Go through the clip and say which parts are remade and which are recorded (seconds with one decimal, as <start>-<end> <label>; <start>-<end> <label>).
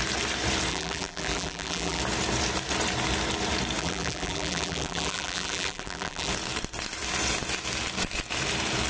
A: 0.0-0.7 recorded; 0.7-2.0 remade; 2.0-3.8 recorded; 3.8-6.3 remade; 6.3-8.9 recorded